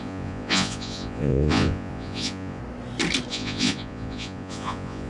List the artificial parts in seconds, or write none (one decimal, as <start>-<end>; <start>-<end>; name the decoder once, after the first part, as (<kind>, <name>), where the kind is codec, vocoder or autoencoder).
0.0-2.6 (vocoder, Vocos); 3.3-5.1